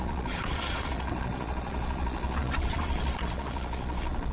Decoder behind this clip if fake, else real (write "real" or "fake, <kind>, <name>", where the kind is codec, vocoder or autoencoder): fake, vocoder, Vocos